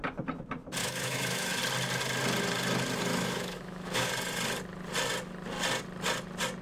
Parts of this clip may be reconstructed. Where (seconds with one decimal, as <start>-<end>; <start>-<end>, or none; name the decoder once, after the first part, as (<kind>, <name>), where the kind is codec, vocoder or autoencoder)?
0.8-1.6 (autoencoder, DAC-VAE); 3.1-4.1

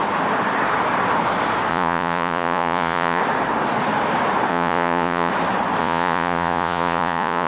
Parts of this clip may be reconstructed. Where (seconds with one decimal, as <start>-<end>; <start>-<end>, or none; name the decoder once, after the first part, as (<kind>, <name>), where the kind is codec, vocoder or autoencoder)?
1.7-3.2 (vocoder, Vocos); 4.5-5.3; 5.8-7.5

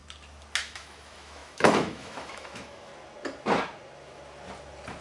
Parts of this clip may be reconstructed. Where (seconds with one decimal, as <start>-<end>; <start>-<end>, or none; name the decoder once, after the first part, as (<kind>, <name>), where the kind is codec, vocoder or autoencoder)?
0.6-2.9 (autoencoder, DAC-VAE)

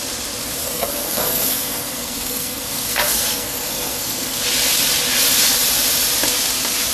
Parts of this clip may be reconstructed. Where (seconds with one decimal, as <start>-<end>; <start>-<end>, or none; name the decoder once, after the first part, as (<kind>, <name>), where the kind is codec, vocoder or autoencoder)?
0.6-4.4 (codec, SNAC)

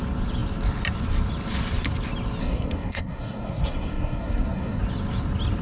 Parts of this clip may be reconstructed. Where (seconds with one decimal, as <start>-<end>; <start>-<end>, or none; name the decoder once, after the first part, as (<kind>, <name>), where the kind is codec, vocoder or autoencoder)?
2.4-4.8 (codec, SNAC)

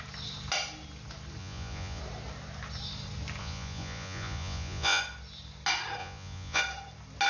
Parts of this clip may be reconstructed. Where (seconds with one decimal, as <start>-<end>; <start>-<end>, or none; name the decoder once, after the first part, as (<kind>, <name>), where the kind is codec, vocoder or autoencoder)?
1.4-2.0 (vocoder, Vocos); 3.4-5.0; 6.0-6.6

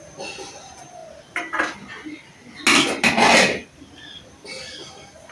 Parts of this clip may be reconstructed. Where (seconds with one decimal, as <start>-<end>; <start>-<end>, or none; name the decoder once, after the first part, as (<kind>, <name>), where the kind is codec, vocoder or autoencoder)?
none